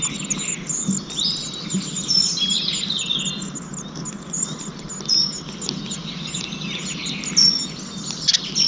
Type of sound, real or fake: real